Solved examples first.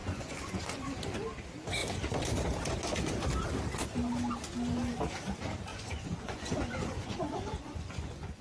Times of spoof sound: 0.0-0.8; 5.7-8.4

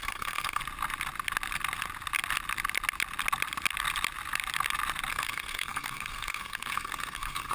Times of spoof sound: 0.0-0.6; 5.1-7.5